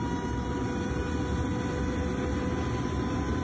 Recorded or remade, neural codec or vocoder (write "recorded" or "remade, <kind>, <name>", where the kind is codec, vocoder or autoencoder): recorded